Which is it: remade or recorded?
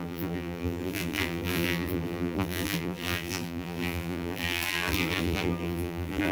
remade